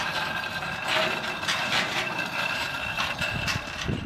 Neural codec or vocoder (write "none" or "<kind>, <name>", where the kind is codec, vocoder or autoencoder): vocoder, BigVGAN v2